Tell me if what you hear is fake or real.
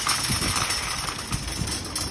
real